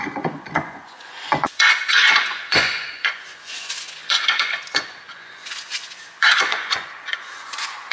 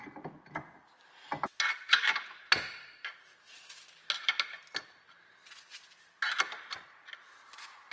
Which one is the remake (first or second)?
first